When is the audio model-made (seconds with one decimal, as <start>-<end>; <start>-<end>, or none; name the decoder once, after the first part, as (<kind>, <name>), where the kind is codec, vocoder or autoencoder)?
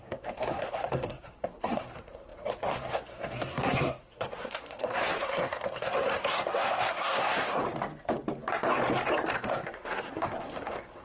0.0-7.6 (codec, SNAC); 9.3-11.0